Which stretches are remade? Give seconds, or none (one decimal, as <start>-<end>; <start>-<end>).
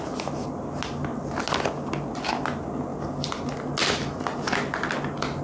none